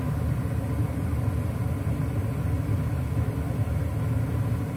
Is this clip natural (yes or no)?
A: yes